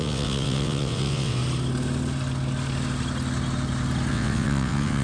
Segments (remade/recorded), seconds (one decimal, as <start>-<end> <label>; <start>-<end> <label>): 0.0-1.4 remade; 1.4-4.1 recorded; 4.1-5.0 remade

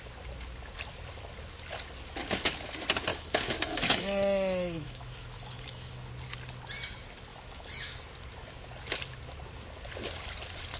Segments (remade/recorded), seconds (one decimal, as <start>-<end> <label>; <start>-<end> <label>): 0.0-3.1 recorded; 3.1-6.1 remade; 6.1-7.3 recorded; 7.3-8.0 remade; 8.0-10.8 recorded